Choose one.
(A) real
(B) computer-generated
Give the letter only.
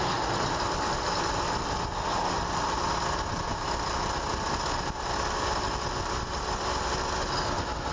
A